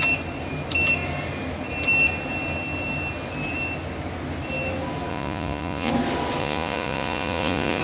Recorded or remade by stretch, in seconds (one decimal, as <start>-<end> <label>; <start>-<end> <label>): 0.0-5.1 recorded; 5.1-5.9 remade; 5.9-6.4 recorded; 6.4-7.8 remade